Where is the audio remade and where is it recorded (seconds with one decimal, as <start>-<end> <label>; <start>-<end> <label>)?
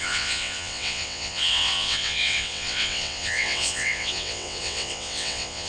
0.0-5.7 remade